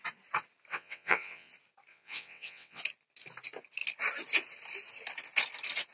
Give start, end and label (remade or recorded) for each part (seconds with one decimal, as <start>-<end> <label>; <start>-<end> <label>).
0.0-0.7 recorded; 0.7-1.5 remade; 1.5-1.9 recorded; 1.9-2.8 remade; 2.8-5.9 recorded